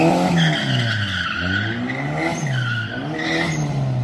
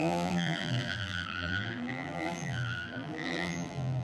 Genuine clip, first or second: first